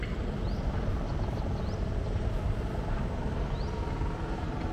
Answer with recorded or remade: recorded